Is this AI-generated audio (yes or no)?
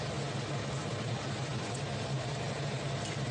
no